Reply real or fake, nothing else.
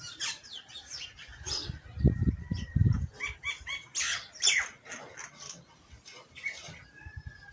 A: real